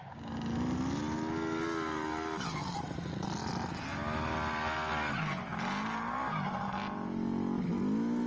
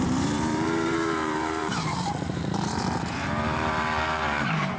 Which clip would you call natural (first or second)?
first